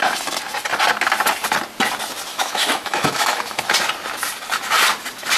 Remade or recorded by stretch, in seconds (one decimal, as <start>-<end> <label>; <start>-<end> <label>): 0.0-2.3 recorded; 2.3-3.6 remade; 3.6-5.4 recorded